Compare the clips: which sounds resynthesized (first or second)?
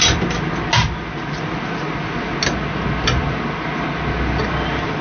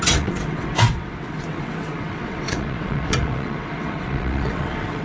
second